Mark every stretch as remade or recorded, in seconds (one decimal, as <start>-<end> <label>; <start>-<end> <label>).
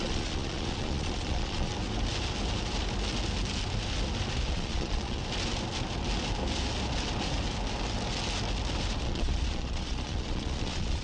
0.0-1.7 remade; 1.7-4.5 recorded; 4.5-5.2 remade; 5.2-9.0 recorded; 9.0-11.0 remade